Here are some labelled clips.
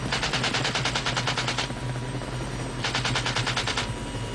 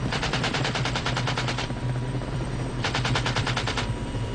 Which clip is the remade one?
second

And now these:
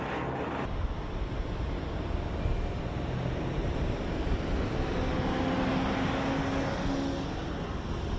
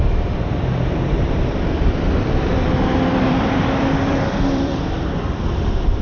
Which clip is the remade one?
second